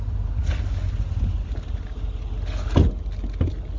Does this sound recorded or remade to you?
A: recorded